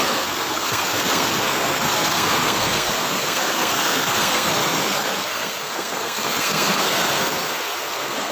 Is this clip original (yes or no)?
no